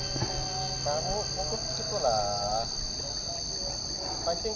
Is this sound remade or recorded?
recorded